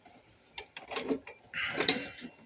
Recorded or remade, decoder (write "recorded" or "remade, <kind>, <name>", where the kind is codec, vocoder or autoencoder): recorded